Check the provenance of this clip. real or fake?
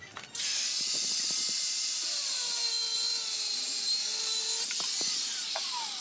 real